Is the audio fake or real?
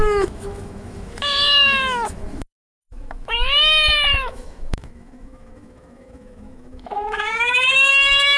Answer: fake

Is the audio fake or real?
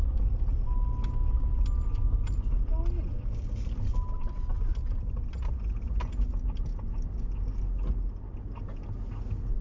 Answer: real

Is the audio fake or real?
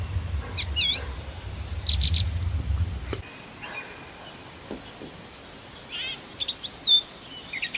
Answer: real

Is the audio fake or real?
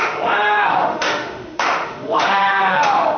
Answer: fake